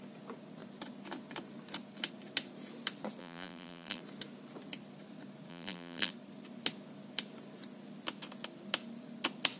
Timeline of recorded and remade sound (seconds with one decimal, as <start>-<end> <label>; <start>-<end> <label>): 0.0-3.2 recorded; 3.2-4.0 remade; 4.0-5.5 recorded; 5.5-6.1 remade; 6.1-9.6 recorded